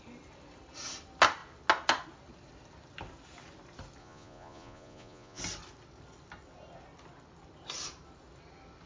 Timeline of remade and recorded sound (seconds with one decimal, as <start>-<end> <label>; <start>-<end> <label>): 0.0-4.0 recorded; 4.0-5.4 remade; 5.4-8.9 recorded